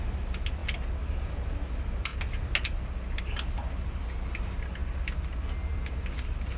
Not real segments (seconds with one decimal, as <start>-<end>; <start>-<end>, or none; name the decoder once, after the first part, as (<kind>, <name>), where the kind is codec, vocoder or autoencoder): none